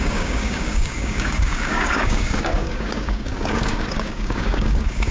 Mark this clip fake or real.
fake